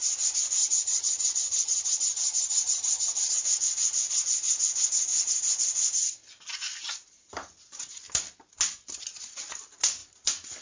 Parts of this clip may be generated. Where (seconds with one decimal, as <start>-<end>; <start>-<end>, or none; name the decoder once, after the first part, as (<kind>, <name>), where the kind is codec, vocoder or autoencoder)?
0.6-3.3 (vocoder, HiFi-GAN)